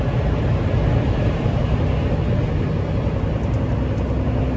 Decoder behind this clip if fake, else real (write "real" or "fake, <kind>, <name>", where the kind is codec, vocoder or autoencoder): real